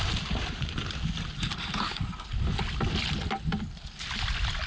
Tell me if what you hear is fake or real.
real